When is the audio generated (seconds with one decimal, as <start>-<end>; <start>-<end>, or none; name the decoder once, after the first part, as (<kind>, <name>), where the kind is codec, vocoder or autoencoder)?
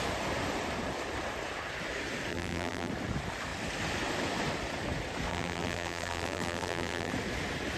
2.3-2.9 (vocoder, BigVGAN v2); 5.3-7.1